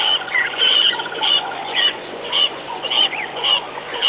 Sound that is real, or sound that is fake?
fake